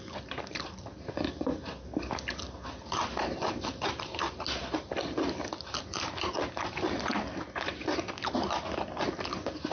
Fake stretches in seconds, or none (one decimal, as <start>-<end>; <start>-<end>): none